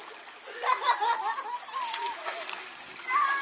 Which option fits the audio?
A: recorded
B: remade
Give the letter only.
A